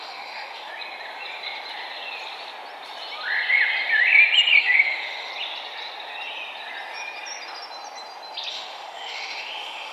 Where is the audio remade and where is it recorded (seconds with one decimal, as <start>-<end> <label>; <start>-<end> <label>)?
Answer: 0.0-0.7 remade; 0.7-4.6 recorded; 4.6-5.3 remade; 5.3-8.5 recorded; 8.5-9.9 remade